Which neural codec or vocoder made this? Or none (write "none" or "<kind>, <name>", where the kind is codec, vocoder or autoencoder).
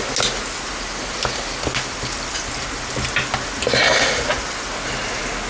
none